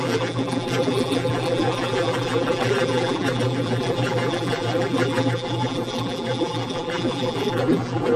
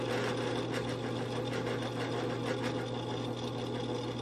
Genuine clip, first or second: second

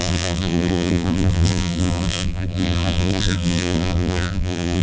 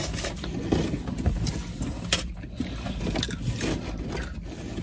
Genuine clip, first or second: second